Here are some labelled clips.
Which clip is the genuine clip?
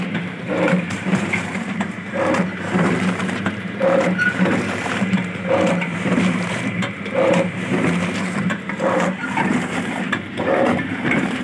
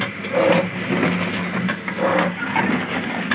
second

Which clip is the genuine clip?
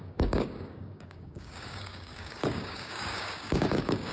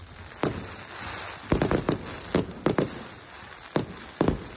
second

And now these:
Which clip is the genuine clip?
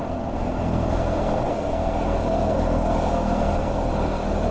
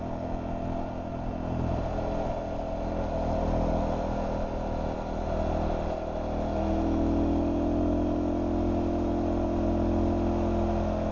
second